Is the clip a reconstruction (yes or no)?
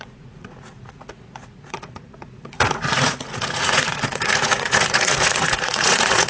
yes